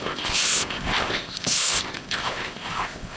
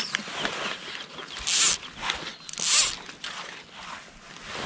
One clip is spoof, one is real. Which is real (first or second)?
second